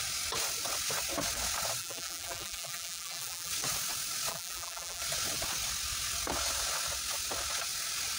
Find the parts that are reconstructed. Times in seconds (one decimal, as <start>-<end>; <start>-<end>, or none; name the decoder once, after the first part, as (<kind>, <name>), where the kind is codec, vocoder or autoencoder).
1.8-3.5 (vocoder, BigVGAN v2); 4.3-5.0